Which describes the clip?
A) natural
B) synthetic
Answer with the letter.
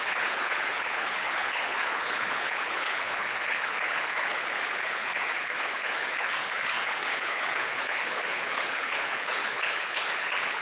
B